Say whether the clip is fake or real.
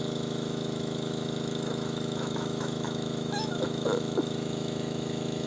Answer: fake